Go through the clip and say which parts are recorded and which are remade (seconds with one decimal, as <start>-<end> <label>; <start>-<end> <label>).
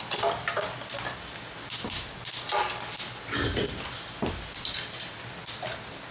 0.0-6.1 recorded